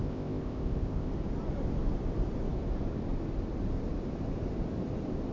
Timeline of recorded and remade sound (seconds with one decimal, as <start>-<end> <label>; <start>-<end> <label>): 0.0-1.1 remade; 1.1-5.3 recorded